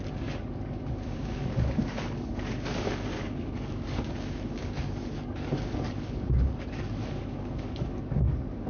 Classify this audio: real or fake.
fake